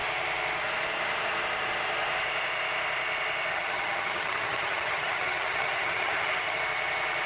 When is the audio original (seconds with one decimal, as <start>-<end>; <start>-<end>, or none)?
0.0-3.5; 6.6-7.3